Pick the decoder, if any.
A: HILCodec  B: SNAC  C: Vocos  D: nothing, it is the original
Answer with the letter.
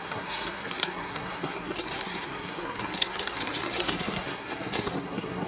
B